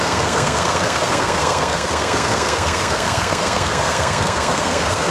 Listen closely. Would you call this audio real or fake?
fake